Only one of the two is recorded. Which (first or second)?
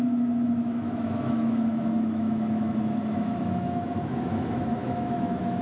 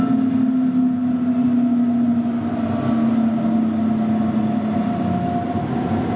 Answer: second